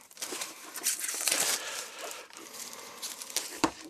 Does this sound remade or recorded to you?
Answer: remade